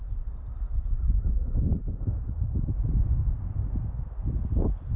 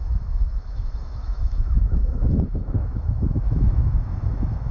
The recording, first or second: first